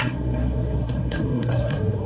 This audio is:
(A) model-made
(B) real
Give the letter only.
A